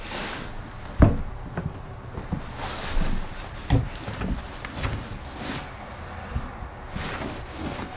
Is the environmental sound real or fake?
real